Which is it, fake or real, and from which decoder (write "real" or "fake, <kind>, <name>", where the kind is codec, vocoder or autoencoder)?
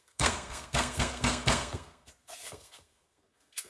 fake, codec, SNAC